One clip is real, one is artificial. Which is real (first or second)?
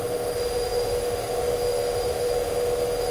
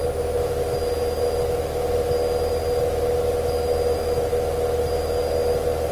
second